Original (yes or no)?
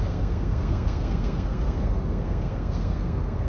no